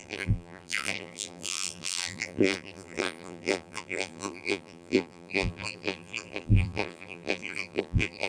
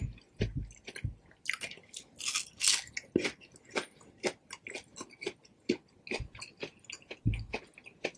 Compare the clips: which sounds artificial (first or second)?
first